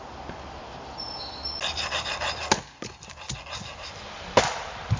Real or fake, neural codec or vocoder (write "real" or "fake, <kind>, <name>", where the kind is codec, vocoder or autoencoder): real